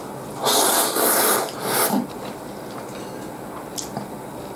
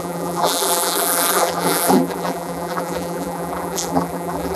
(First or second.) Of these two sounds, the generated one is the second